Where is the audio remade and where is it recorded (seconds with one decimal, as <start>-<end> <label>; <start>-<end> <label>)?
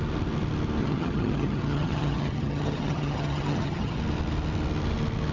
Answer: 0.0-0.8 recorded; 0.8-4.0 remade; 4.0-5.3 recorded